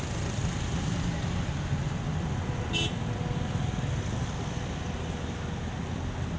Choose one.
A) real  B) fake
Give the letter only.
A